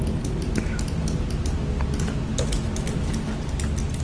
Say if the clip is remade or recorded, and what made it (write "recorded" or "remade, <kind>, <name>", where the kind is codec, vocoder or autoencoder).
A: recorded